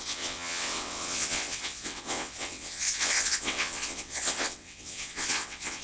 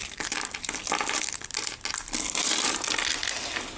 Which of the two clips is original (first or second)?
second